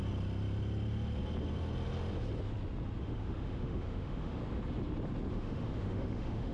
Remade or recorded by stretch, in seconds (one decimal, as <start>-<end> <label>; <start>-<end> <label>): 0.0-3.0 recorded; 3.0-4.4 remade; 4.4-5.3 recorded; 5.3-6.5 remade